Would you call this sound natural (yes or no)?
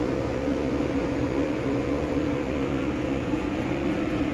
no